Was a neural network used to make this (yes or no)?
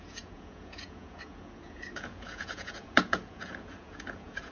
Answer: yes